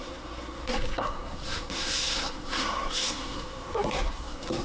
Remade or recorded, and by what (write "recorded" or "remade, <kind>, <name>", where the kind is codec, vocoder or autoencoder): remade, codec, SNAC